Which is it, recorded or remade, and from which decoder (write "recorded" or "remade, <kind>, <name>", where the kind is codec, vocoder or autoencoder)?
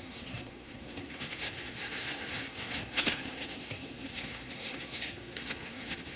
remade, codec, SNAC